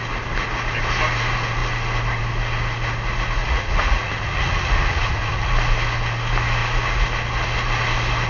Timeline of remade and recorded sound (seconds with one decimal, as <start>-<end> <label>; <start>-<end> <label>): 0.0-3.4 recorded; 3.4-5.5 remade; 5.5-8.3 recorded